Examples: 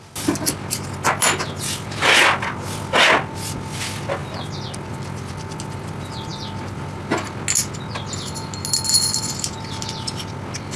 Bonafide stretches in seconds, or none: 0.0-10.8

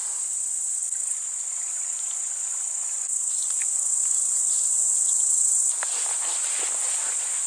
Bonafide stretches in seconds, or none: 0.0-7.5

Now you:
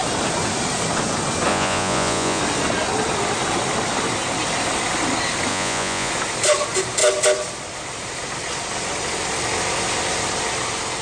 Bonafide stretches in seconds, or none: 0.0-1.5; 2.4-5.5; 6.1-11.0